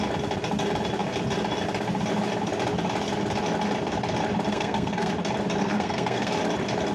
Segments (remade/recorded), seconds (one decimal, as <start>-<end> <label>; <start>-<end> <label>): 0.0-4.5 recorded; 4.5-5.1 remade; 5.1-5.6 recorded; 5.6-6.3 remade; 6.3-6.9 recorded